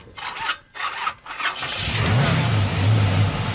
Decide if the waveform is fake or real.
real